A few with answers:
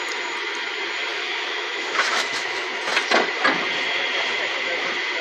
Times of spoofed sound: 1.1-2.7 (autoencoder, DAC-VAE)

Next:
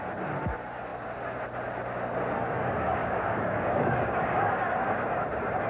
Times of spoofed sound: 3.0-4.5 (codec, DAC)

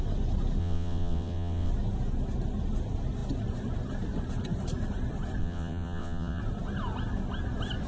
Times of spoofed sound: 0.6-1.7 (vocoder, WaveNeXt); 5.4-6.4

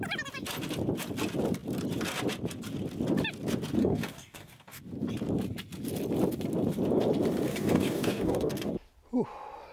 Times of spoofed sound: 3.8-4.8 (codec, DAC); 7.5-8.7

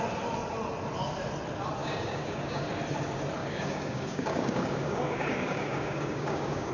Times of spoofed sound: 1.8-2.7 (codec, DAC); 3.4-6.7

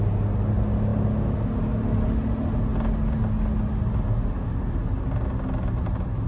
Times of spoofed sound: none